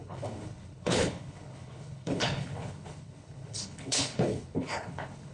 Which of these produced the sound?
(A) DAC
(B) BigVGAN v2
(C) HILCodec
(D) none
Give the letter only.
C